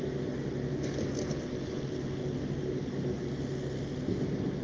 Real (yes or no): yes